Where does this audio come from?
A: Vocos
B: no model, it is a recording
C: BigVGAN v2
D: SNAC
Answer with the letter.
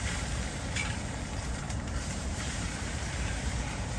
C